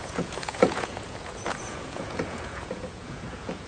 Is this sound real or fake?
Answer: fake